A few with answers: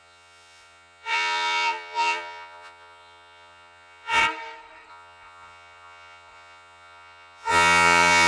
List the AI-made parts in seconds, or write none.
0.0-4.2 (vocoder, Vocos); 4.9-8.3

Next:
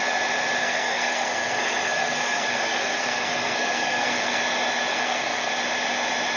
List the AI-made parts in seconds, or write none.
0.6-4.4 (codec, SNAC); 4.9-5.5

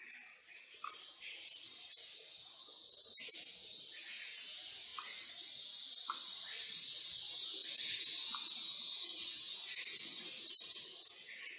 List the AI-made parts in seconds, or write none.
0.0-7.6 (vocoder, BigVGAN v2); 8.7-9.5; 10.3-11.6

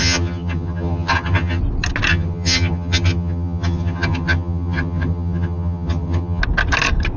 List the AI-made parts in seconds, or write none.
0.0-1.6 (vocoder, HiFi-GAN); 2.1-6.4

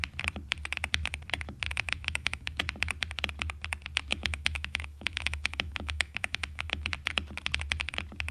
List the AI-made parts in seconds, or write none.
1.7-2.6 (autoencoder, DAC-VAE); 4.1-6.9

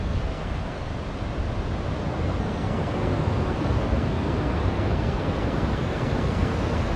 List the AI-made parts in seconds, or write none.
0.0-0.9 (codec, SNAC); 2.0-7.0

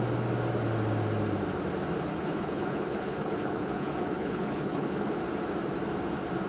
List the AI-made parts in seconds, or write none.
2.1-5.1 (codec, HILCodec)

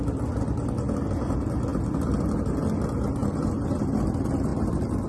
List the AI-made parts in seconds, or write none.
1.7-2.2 (vocoder, BigVGAN v2); 3.2-3.8; 4.5-5.1